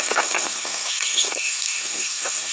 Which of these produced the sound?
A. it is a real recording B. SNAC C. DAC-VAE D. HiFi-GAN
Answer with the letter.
B